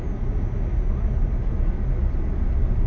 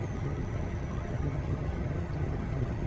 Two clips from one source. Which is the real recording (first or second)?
first